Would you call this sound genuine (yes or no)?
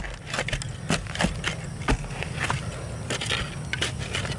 yes